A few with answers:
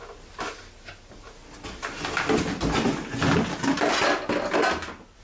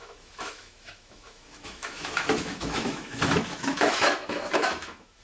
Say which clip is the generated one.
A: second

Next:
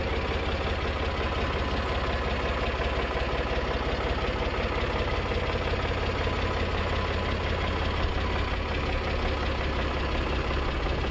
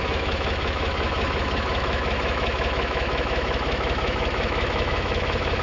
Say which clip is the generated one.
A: second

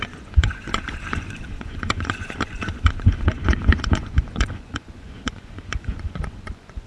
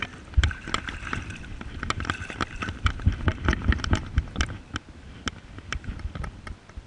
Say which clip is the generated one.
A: first